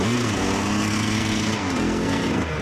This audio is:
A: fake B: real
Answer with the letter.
A